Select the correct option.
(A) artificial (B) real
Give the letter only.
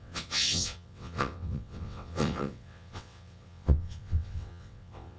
A